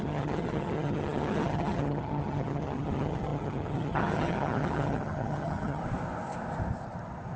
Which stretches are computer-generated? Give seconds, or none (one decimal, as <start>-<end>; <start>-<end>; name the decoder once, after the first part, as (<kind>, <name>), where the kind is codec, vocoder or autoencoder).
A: 0.0-5.8 (vocoder, HiFi-GAN)